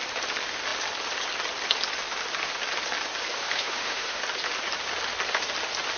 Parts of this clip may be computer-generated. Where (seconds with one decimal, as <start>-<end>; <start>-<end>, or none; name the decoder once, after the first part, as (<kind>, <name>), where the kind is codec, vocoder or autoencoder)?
3.3-4.2 (autoencoder, DAC-VAE)